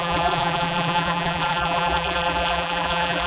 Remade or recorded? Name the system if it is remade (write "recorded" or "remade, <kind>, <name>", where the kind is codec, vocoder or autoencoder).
remade, vocoder, BigVGAN v2